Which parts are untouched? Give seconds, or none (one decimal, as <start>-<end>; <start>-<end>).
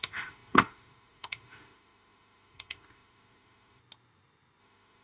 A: 3.8-4.6